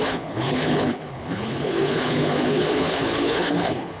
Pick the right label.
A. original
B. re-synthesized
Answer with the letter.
B